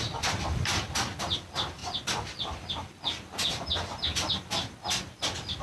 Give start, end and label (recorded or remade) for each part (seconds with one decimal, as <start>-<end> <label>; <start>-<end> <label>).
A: 0.0-5.6 recorded